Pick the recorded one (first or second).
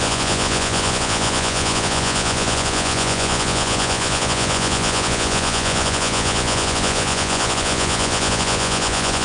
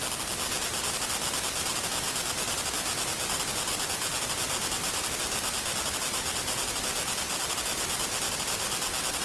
second